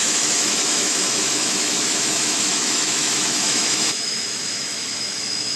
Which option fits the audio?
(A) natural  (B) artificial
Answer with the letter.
B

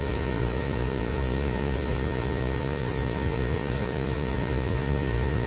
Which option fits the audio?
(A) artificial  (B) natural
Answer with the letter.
A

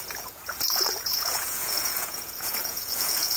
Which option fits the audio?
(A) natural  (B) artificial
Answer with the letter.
B